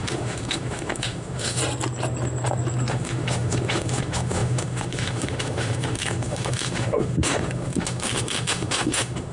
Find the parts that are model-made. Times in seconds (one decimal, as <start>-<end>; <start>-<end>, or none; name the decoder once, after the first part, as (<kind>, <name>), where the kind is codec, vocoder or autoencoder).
0.0-1.6 (autoencoder, DAC-VAE); 2.9-9.3